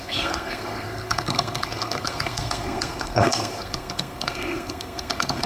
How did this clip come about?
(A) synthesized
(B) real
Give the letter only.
A